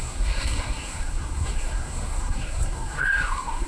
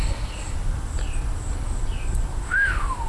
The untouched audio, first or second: second